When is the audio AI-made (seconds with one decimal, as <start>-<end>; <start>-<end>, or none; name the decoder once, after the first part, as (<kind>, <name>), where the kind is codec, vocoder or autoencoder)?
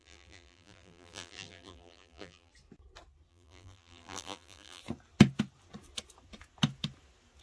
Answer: 0.0-2.5 (vocoder, BigVGAN v2); 3.3-4.8